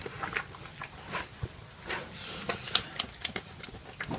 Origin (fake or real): real